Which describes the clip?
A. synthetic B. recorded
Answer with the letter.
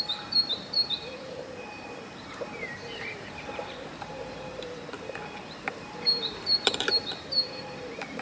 A